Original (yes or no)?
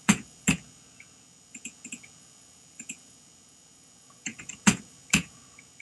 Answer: no